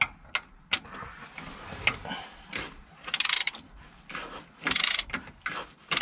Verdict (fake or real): real